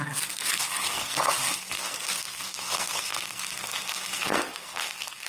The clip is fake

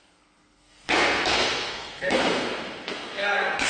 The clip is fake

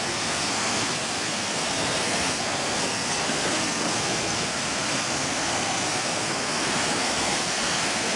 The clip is fake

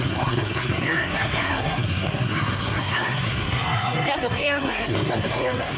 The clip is fake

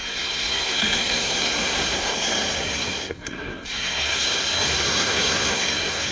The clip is fake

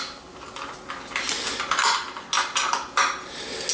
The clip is real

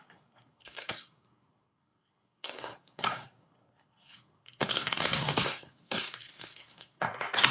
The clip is fake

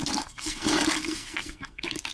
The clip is fake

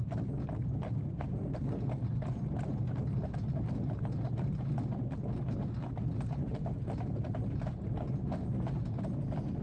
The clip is real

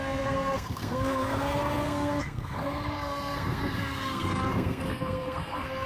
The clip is fake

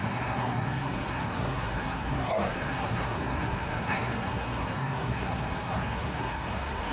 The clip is fake